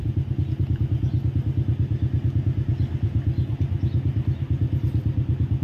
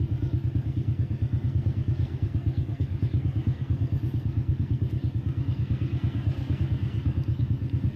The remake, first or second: second